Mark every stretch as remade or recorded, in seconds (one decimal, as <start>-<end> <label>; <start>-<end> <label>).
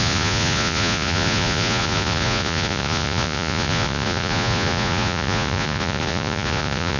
0.0-7.0 remade